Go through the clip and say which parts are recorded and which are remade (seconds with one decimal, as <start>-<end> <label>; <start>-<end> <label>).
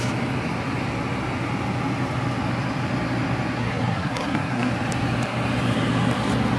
0.0-3.6 recorded; 3.6-4.7 remade; 4.7-6.6 recorded